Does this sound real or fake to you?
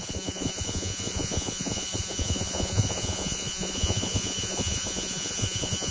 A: fake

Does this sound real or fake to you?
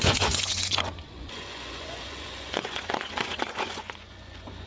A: fake